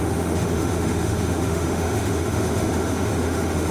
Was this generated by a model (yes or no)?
yes